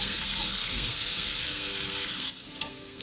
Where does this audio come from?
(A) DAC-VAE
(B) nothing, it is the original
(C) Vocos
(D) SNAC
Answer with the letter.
D